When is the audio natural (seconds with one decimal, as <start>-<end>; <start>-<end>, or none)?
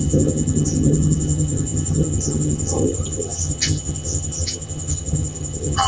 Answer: none